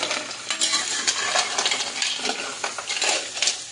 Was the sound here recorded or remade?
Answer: recorded